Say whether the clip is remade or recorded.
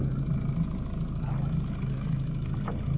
recorded